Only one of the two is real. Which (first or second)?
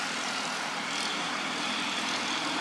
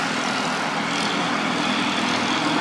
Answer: second